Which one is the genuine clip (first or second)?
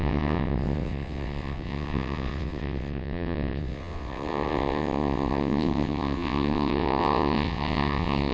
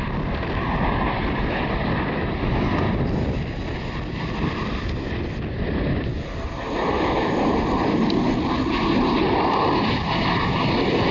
second